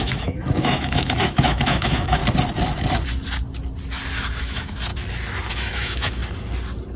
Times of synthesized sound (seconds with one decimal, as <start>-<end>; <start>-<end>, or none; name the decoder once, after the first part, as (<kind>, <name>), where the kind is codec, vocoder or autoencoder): 0.0-2.2 (autoencoder, DAC-VAE); 4.4-4.9; 5.5-6.2